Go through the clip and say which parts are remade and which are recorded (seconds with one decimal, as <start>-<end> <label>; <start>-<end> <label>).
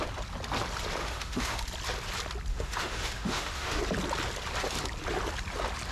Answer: 0.0-1.0 recorded; 1.0-1.6 remade; 1.6-2.5 recorded; 2.5-3.8 remade; 3.8-5.9 recorded